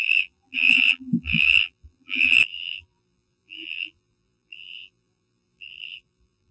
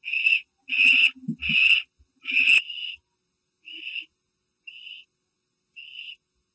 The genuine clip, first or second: second